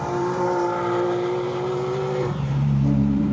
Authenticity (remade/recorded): remade